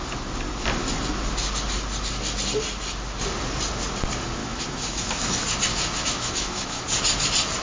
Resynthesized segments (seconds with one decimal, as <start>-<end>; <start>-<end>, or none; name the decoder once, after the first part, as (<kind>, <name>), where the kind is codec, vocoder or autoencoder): 4.4-5.1 (autoencoder, DAC-VAE); 5.7-6.8